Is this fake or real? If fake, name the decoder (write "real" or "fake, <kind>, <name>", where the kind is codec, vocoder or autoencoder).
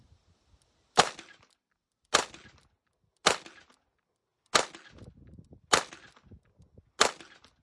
real